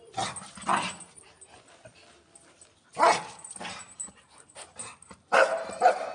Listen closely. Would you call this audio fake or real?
real